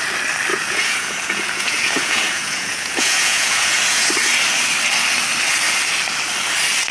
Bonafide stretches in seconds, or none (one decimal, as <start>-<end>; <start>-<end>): 0.0-0.5; 4.1-6.9